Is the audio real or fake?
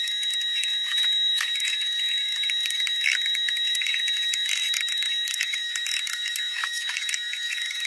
fake